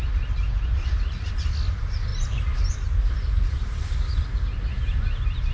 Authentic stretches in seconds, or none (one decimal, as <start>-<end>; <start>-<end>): 0.0-5.5